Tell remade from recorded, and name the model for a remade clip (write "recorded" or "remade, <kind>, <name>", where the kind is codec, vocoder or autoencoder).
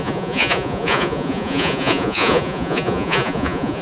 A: remade, vocoder, Vocos